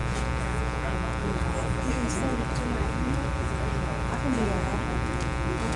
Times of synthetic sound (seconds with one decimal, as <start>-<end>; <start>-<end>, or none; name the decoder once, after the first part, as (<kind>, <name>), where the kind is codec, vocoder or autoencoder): 1.2-1.9 (vocoder, BigVGAN v2); 2.3-4.2